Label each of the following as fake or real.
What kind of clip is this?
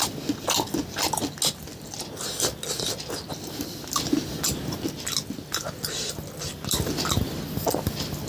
real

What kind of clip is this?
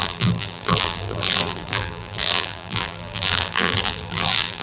fake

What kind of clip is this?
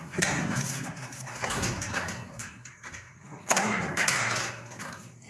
fake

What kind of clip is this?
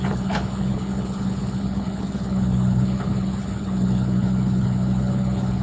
fake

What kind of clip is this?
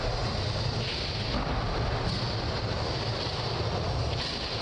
real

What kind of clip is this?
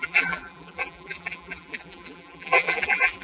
fake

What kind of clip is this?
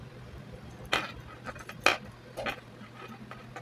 real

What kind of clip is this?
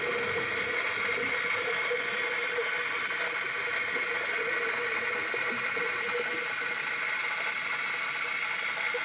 real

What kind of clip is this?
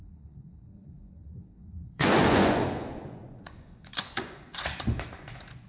fake